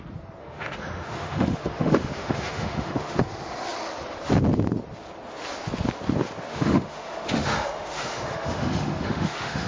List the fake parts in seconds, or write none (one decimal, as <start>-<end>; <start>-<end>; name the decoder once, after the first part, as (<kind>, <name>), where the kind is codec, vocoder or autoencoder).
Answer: 0.4-3.2 (autoencoder, DAC-VAE); 6.5-9.7